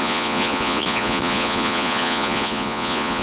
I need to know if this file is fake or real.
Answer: fake